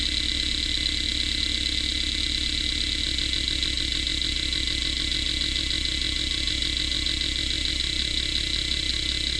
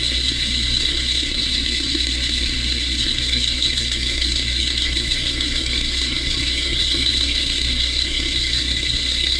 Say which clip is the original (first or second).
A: first